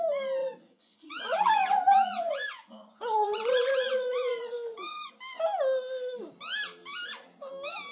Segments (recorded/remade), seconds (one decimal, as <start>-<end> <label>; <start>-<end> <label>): 0.0-0.4 recorded; 0.4-5.1 remade; 5.1-7.9 recorded